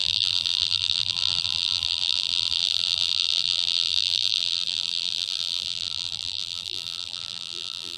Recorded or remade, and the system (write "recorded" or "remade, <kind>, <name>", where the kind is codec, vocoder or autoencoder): remade, vocoder, BigVGAN v2